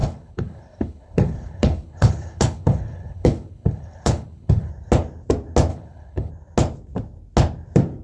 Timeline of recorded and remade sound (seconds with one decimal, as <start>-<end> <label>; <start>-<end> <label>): 0.0-4.7 remade; 4.7-5.7 recorded; 5.7-6.3 remade; 6.3-8.0 recorded